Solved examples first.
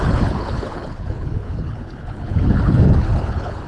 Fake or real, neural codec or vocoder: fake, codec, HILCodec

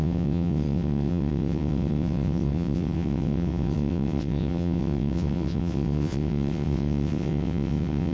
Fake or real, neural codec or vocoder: fake, vocoder, WaveNeXt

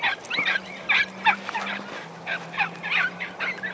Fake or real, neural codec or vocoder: real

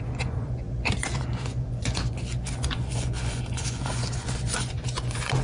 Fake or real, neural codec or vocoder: fake, vocoder, Vocos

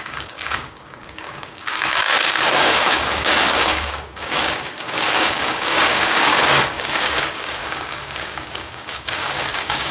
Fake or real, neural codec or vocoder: fake, codec, DAC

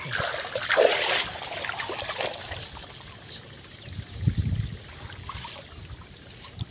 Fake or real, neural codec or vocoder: real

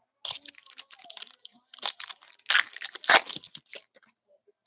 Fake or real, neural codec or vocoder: real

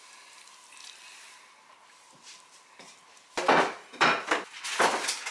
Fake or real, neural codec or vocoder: real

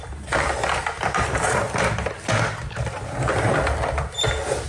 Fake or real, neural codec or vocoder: real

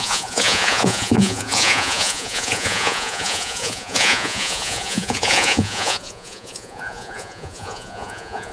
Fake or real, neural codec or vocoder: fake, vocoder, Vocos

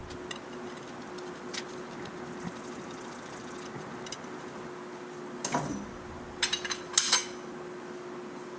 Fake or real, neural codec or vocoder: real